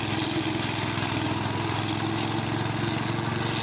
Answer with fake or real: real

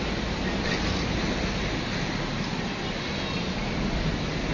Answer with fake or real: real